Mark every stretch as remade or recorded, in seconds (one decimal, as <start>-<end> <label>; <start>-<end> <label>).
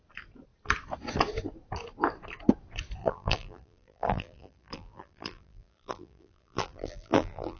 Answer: 0.0-3.0 recorded; 3.0-7.6 remade